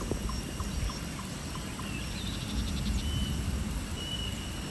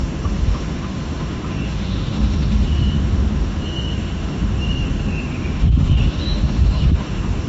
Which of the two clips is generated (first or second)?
second